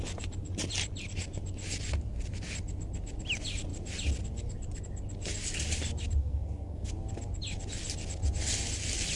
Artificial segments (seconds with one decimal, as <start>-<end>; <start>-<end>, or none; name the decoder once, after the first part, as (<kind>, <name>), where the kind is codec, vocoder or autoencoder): 6.2-6.9 (codec, SNAC)